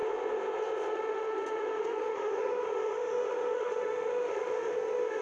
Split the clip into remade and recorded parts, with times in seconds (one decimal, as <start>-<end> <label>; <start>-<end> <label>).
0.0-0.9 recorded; 0.9-5.2 remade